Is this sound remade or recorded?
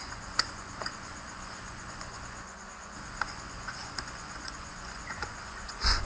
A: remade